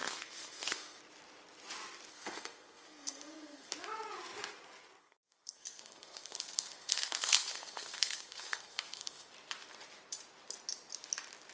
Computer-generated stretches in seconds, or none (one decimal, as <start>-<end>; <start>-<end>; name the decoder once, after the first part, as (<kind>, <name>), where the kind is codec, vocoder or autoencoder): 0.0-1.0 (codec, SNAC); 2.1-3.7; 5.0-9.3